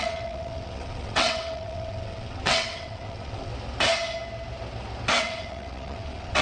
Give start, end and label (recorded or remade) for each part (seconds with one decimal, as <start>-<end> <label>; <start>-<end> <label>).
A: 0.0-3.5 remade; 3.5-5.2 recorded; 5.2-6.4 remade